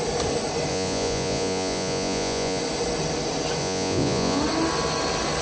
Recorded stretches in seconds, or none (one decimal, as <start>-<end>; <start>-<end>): 0.0-0.7; 2.6-3.6; 4.4-5.4